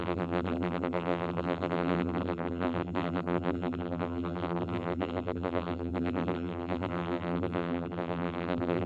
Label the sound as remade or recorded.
remade